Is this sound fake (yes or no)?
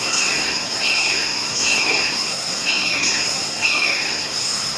yes